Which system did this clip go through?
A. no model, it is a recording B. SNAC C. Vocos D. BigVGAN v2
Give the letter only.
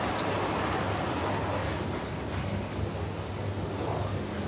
A